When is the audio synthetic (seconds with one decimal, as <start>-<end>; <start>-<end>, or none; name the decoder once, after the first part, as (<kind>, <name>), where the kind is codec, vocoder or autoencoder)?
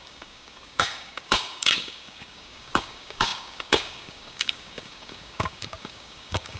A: 0.0-6.6 (codec, DAC)